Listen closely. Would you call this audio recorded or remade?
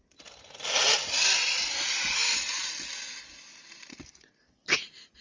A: recorded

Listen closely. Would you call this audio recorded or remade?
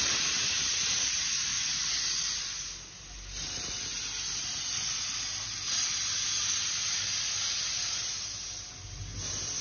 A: recorded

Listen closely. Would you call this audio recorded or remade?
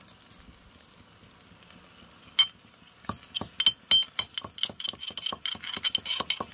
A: recorded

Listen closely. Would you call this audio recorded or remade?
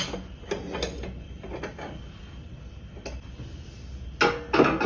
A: recorded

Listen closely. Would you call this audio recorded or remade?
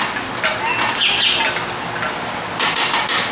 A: recorded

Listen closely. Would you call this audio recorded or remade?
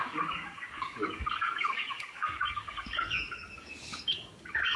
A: remade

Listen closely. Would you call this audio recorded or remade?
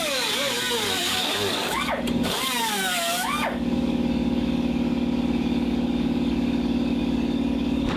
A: remade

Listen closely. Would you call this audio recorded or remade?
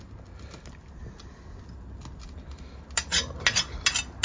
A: recorded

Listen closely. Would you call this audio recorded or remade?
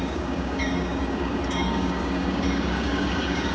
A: remade